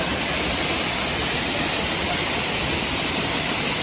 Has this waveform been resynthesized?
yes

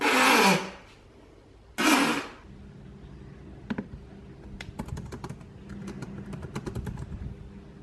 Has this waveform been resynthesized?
no